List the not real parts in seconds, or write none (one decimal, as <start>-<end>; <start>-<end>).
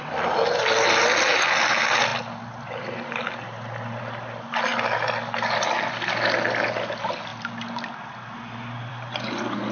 none